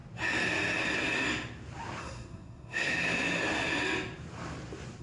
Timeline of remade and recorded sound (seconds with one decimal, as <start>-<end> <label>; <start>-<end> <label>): 0.0-2.0 recorded; 2.0-2.9 remade; 2.9-5.0 recorded